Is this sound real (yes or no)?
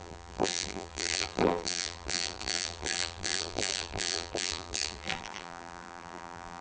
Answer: no